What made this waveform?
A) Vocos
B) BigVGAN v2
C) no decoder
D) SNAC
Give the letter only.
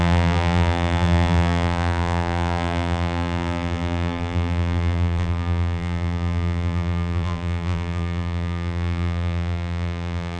B